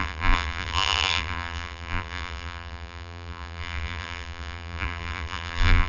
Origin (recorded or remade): remade